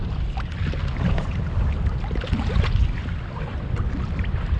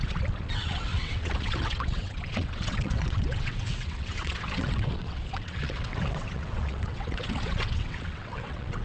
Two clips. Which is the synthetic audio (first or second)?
second